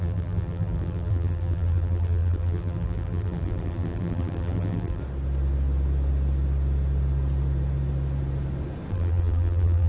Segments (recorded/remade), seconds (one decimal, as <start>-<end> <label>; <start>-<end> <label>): 0.0-5.0 remade; 5.0-8.9 recorded; 8.9-9.9 remade